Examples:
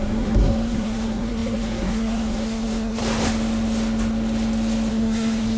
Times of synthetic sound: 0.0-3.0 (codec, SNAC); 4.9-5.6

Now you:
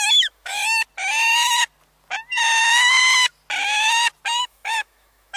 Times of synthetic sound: 0.0-0.6 (autoencoder, DAC-VAE); 2.6-3.0; 4.4-5.4

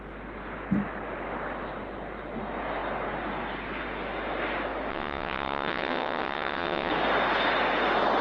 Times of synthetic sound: 4.9-6.9 (vocoder, WaveNeXt)

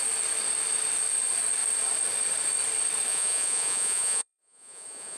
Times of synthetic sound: 3.1-5.2 (vocoder, Vocos)